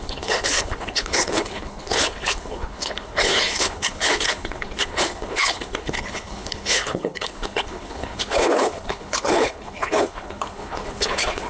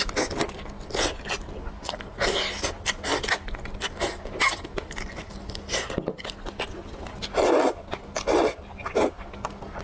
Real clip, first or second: second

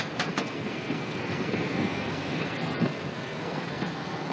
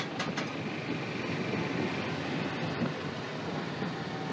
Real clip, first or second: second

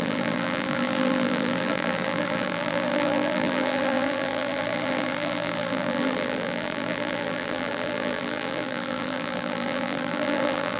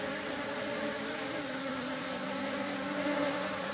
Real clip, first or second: second